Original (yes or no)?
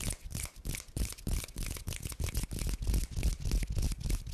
yes